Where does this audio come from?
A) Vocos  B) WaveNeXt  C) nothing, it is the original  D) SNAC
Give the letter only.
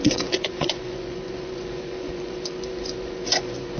A